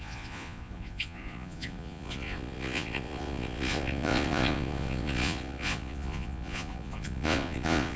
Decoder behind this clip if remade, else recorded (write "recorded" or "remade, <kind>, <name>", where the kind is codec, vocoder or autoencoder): remade, vocoder, Vocos